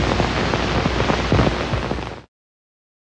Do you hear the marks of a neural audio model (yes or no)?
no